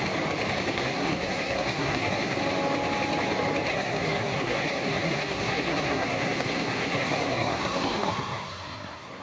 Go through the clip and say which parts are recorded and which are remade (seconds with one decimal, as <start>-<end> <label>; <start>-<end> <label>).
0.0-0.7 recorded; 0.7-2.4 remade; 2.4-3.7 recorded; 3.7-9.2 remade